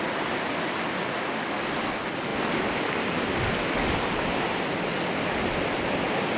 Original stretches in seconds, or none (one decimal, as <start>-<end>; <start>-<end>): 0.0-6.4